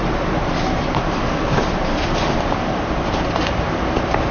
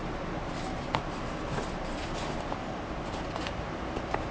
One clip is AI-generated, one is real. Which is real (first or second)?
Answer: second